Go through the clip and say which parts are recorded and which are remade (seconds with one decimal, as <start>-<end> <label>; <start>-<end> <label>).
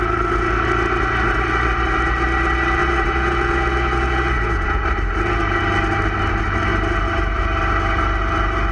0.0-2.8 recorded; 2.8-4.8 remade; 4.8-8.7 recorded